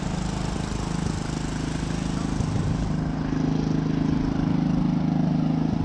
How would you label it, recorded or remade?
recorded